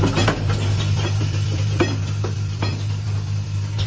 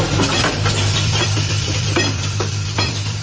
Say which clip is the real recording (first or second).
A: first